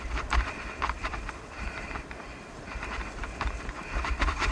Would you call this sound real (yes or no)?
no